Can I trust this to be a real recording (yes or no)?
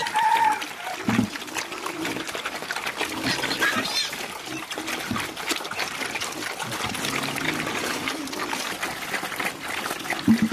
yes